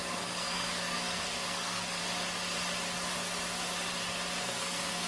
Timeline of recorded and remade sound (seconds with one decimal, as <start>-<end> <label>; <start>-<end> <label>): 0.0-2.0 remade; 2.0-4.4 recorded; 4.4-5.1 remade